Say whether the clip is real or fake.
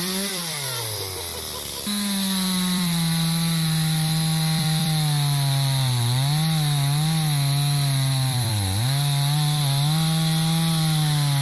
fake